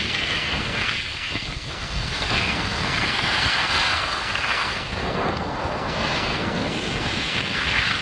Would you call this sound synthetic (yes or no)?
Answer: yes